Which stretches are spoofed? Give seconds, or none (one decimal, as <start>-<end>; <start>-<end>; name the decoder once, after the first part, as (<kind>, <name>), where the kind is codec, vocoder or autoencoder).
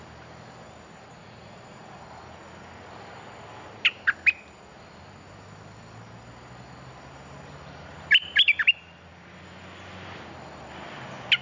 1.2-2.0 (vocoder, Vocos)